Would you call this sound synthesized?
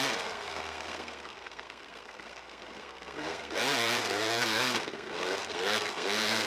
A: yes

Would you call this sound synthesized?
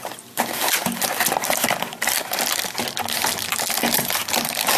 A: yes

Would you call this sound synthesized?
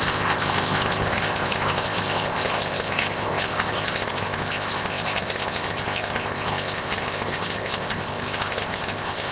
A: yes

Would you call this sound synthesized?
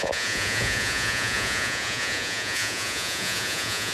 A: yes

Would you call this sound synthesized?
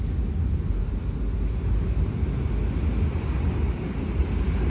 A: no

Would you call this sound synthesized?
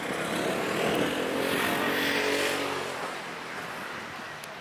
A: no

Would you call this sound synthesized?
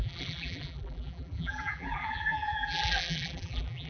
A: yes